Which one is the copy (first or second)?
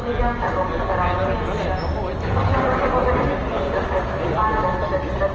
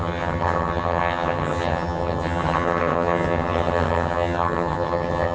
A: second